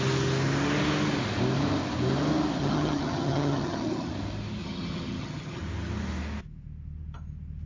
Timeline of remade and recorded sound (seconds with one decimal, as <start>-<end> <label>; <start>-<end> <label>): 0.0-2.6 recorded; 2.6-4.1 remade; 4.1-4.6 recorded; 4.6-5.6 remade; 5.6-7.7 recorded